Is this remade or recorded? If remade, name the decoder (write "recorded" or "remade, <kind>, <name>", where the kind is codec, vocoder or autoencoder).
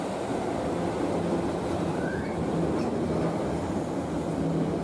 recorded